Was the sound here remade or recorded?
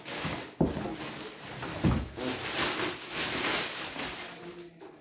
recorded